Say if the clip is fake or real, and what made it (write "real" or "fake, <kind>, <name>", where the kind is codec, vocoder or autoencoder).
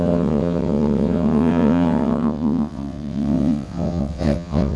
fake, vocoder, WaveNeXt